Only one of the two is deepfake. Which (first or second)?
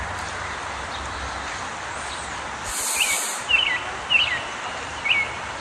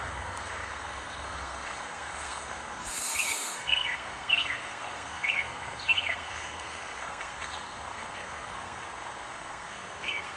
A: second